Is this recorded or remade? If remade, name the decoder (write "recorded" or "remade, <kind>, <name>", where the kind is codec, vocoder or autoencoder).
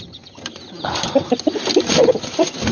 recorded